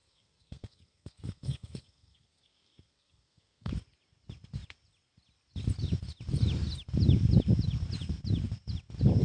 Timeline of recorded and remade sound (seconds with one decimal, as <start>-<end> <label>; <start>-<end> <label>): 0.0-3.7 remade; 3.7-9.2 recorded